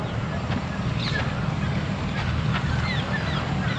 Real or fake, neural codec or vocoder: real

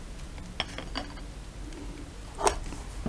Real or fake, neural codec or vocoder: real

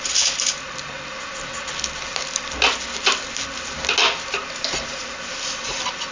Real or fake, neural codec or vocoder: real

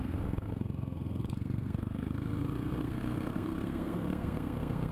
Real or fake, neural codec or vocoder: fake, codec, SNAC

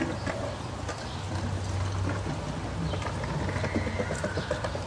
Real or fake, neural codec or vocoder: real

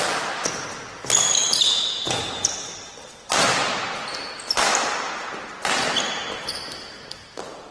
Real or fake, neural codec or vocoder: real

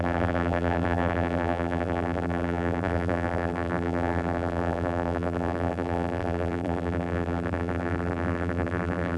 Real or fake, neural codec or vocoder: fake, vocoder, BigVGAN v2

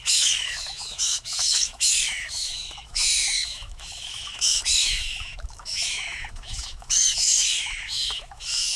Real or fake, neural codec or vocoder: fake, autoencoder, DAC-VAE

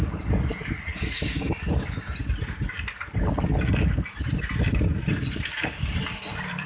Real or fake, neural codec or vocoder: real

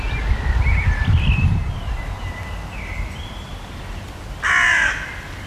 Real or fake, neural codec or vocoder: real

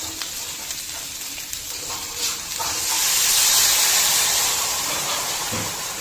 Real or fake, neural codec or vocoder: fake, vocoder, BigVGAN v2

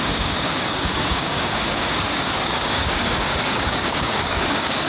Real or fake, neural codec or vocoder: fake, codec, DAC